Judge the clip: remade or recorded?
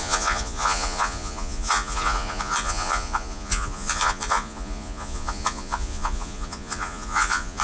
remade